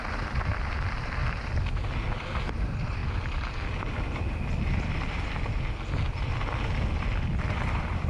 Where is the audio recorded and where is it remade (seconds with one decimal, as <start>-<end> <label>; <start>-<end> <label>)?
0.0-1.2 remade; 1.2-2.5 recorded; 2.5-3.0 remade; 3.0-7.4 recorded; 7.4-8.1 remade